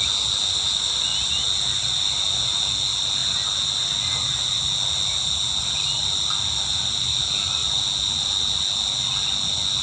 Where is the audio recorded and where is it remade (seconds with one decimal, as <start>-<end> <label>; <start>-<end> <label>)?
0.0-9.8 recorded